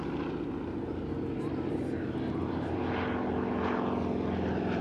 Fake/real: real